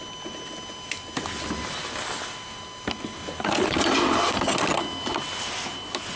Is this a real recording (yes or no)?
yes